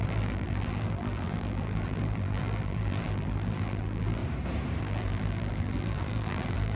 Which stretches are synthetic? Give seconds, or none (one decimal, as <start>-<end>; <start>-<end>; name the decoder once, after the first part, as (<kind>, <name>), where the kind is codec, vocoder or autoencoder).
0.0-4.2 (vocoder, BigVGAN v2); 4.8-6.8